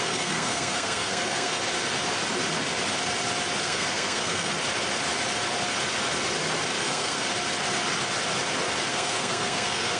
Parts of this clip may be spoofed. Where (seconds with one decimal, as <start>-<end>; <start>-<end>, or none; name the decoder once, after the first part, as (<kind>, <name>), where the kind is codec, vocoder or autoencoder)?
0.0-1.6 (codec, SNAC); 3.6-4.5; 6.8-7.3; 8.9-10.0